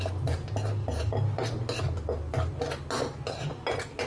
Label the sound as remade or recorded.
recorded